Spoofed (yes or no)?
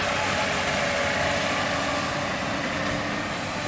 no